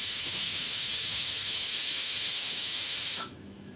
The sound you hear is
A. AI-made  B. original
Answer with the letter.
A